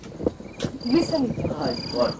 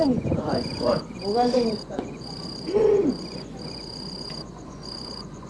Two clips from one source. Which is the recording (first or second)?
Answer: first